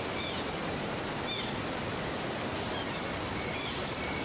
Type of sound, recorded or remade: recorded